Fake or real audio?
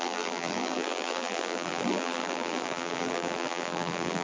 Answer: fake